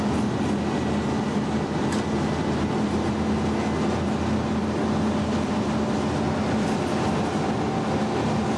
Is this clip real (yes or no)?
yes